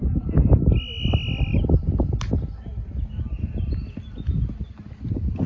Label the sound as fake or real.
real